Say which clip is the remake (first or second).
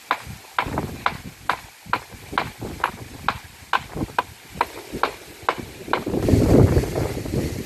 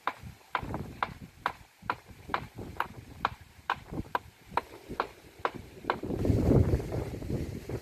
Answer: second